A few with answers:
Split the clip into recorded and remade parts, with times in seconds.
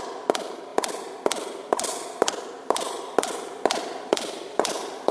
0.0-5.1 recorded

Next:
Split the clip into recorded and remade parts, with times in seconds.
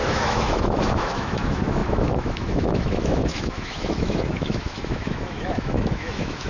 0.0-6.5 remade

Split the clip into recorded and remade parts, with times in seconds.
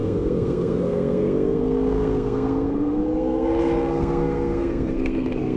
0.0-5.6 remade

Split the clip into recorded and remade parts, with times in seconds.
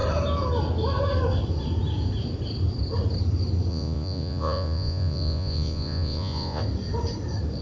0.0-3.7 recorded; 3.7-6.6 remade; 6.6-7.6 recorded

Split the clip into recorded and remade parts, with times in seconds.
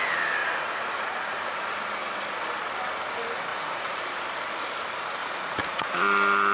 0.0-0.4 recorded; 0.4-1.5 remade; 1.5-3.5 recorded; 3.5-4.0 remade; 4.0-5.2 recorded; 5.2-5.9 remade; 5.9-6.5 recorded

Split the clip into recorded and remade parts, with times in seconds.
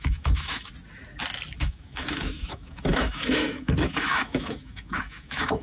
0.0-0.7 remade; 0.7-1.6 recorded; 1.6-5.6 remade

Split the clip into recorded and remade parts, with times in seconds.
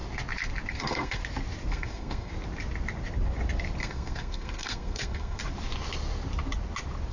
0.0-0.7 recorded; 0.7-1.2 remade; 1.2-1.7 recorded; 1.7-2.3 remade; 2.3-3.8 recorded; 3.8-5.4 remade; 5.4-7.1 recorded